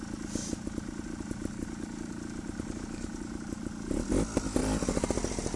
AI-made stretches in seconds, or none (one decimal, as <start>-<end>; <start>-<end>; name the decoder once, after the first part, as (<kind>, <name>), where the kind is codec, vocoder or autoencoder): 0.4-3.8 (vocoder, BigVGAN v2); 4.6-5.6